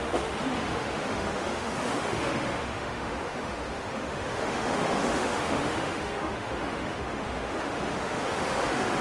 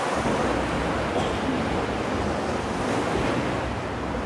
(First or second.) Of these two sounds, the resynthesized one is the first